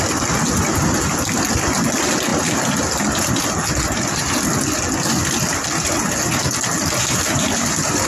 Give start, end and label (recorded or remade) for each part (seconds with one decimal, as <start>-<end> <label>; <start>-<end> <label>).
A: 0.0-8.1 recorded